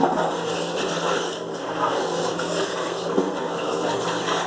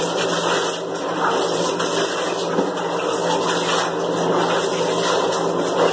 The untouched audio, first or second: second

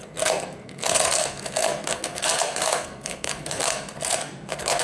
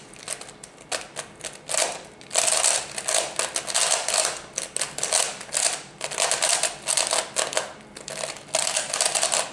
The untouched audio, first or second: second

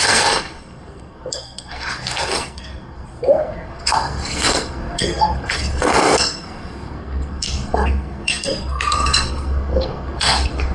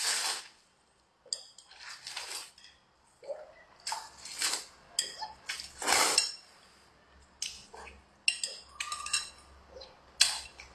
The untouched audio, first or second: second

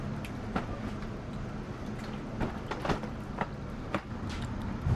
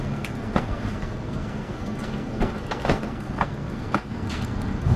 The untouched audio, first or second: first